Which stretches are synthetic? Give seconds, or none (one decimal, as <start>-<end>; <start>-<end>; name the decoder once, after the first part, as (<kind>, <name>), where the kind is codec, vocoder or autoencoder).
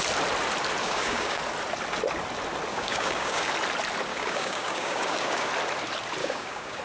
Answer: 0.8-1.4 (codec, DAC); 2.7-3.5; 4.1-5.5; 6.2-6.8